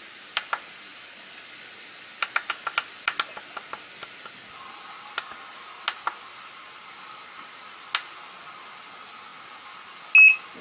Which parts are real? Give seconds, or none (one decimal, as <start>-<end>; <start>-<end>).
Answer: 0.0-10.6